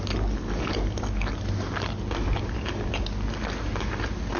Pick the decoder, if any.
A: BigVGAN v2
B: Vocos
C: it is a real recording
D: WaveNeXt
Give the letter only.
C